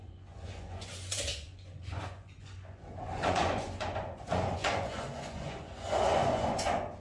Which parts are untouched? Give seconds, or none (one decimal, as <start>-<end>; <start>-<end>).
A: none